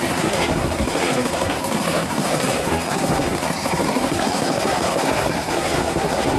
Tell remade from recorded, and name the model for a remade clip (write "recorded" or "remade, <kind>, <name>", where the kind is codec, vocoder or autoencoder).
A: remade, codec, SNAC